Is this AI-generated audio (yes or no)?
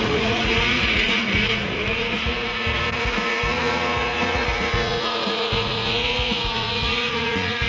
yes